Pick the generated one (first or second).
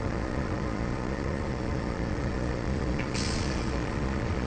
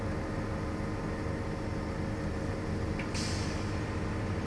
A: first